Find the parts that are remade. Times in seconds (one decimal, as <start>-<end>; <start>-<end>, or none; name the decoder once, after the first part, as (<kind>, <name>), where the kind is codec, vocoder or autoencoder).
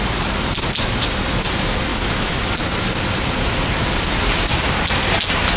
1.9-2.4 (autoencoder, DAC-VAE)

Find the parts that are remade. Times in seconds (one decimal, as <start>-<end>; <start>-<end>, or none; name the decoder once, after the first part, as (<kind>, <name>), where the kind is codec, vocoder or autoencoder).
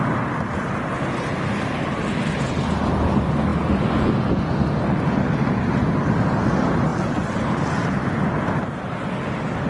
none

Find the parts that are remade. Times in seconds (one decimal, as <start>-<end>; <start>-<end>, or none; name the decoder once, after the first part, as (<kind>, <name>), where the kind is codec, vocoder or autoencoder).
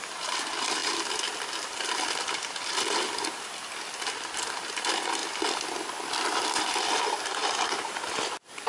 0.0-8.7 (vocoder, BigVGAN v2)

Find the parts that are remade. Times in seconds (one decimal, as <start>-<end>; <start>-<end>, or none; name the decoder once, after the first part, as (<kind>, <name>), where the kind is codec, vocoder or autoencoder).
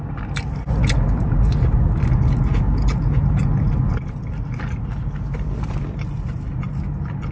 none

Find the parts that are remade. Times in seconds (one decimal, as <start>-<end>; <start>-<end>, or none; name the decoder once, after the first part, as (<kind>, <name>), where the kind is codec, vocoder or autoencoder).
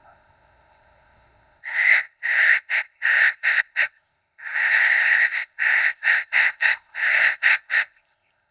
0.0-8.5 (codec, ZipCodec)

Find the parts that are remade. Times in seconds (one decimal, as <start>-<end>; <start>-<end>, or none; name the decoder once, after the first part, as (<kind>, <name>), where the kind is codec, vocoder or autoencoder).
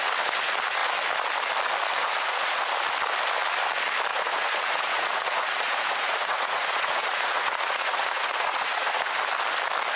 2.0-2.6 (vocoder, Vocos); 4.1-9.1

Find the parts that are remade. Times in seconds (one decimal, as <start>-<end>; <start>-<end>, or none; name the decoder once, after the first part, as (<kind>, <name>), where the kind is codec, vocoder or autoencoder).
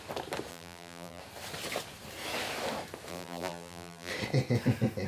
0.5-1.2 (vocoder, BigVGAN v2); 3.1-4.1